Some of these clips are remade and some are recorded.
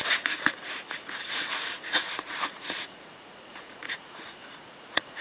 remade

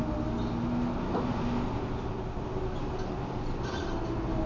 recorded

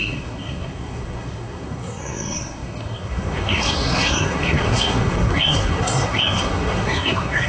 remade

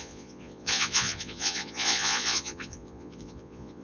remade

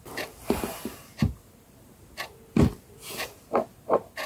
recorded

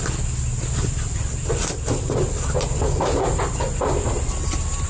recorded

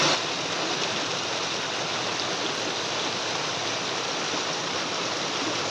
recorded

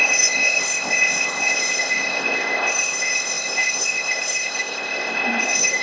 remade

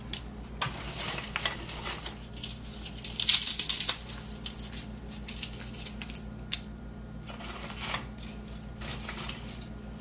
recorded